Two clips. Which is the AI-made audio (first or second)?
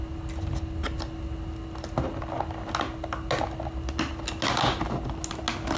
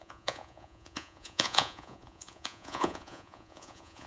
second